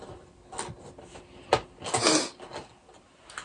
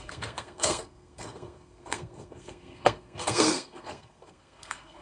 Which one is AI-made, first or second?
second